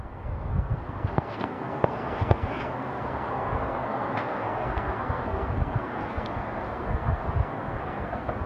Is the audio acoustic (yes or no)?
no